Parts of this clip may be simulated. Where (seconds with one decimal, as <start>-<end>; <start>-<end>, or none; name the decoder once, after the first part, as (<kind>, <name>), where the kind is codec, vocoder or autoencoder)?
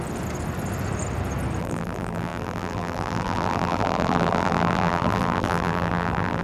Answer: 1.6-6.4 (vocoder, BigVGAN v2)